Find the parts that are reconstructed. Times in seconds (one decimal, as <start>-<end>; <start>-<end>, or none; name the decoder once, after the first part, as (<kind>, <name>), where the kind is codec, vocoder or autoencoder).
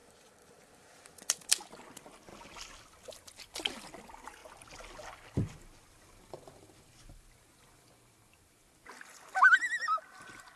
0.0-1.8 (vocoder, BigVGAN v2)